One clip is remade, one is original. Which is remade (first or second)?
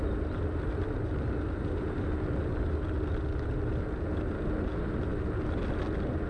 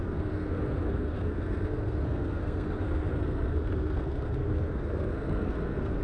second